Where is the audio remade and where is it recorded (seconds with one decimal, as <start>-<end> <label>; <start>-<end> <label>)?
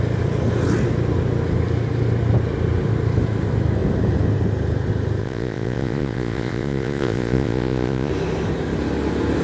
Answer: 0.0-5.2 recorded; 5.2-8.1 remade; 8.1-9.4 recorded